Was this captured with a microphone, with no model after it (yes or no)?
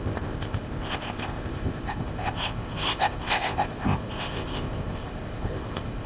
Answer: no